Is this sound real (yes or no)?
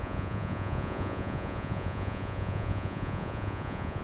no